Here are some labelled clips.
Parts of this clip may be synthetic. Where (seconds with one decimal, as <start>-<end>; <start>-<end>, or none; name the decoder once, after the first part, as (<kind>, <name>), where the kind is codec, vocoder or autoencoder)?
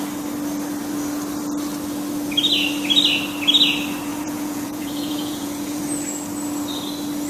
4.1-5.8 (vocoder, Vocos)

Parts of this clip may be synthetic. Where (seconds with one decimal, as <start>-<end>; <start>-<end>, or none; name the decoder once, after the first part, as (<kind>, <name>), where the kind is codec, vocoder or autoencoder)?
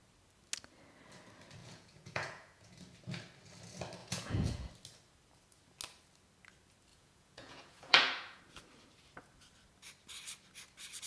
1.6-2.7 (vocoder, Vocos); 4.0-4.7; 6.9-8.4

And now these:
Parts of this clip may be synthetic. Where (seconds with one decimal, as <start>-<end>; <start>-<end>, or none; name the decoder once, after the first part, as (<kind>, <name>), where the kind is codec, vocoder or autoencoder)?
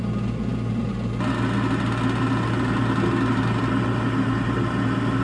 none